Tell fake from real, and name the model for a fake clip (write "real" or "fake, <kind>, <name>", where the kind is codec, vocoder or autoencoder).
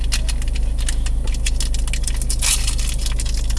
real